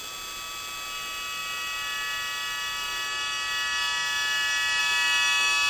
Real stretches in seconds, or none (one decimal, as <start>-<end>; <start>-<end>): 0.0-5.7